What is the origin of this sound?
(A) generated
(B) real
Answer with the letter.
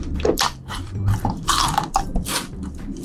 A